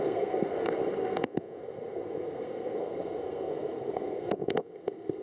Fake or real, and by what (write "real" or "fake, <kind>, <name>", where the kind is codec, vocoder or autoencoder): fake, codec, SNAC